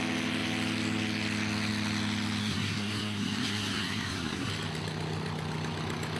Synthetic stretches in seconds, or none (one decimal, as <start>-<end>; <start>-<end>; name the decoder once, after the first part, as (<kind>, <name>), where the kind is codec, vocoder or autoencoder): 2.4-4.5 (codec, SNAC)